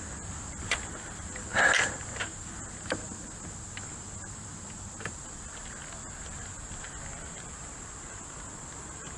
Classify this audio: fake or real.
real